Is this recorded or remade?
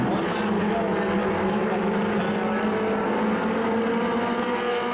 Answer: recorded